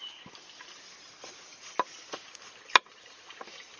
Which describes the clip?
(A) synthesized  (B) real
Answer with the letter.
B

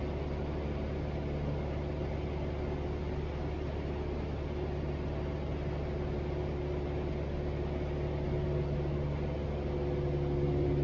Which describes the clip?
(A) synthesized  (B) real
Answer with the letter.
B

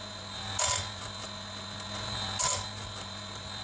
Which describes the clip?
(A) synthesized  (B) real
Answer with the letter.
B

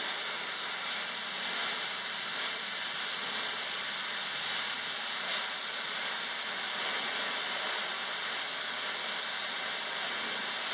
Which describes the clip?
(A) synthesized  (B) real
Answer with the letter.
B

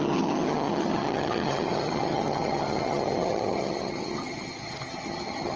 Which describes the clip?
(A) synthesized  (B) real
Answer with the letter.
A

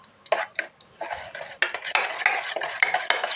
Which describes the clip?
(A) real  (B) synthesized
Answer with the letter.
A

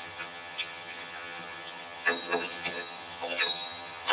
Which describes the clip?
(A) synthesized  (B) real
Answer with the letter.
A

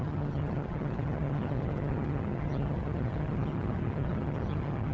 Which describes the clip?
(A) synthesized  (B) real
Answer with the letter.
A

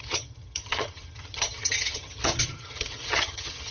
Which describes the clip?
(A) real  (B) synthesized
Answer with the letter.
B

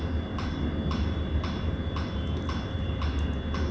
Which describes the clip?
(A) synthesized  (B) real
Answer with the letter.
B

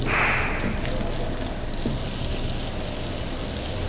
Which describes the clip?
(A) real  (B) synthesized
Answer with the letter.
A